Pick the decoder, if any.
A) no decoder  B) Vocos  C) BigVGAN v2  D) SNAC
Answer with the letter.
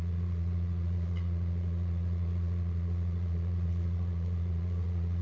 B